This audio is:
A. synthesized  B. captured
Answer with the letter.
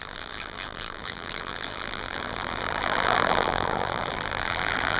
A